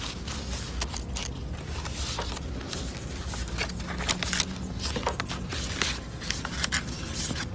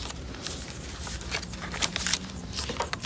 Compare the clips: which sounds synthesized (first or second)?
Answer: second